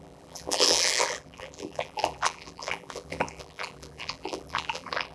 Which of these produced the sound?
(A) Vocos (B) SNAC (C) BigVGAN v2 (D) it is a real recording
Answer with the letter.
C